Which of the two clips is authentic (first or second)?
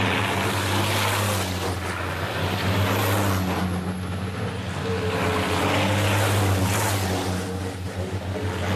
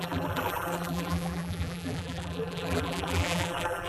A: first